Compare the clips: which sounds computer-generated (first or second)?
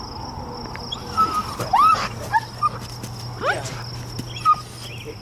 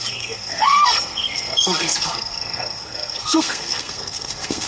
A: second